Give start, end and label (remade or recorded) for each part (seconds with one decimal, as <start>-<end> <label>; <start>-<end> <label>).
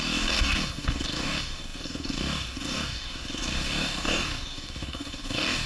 0.0-5.7 remade